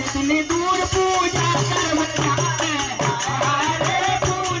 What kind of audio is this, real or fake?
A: real